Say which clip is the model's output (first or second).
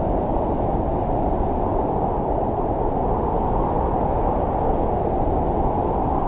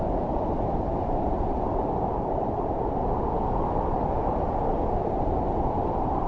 second